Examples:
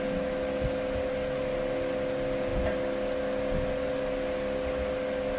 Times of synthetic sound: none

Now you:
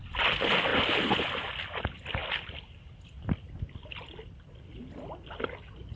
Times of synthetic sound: none

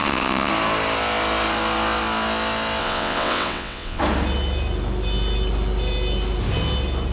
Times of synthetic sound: 0.0-0.5; 2.8-4.0